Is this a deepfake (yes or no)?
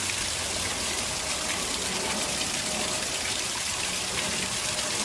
no